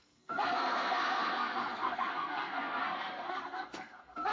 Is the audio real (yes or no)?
no